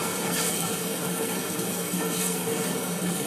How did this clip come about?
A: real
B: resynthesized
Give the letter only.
B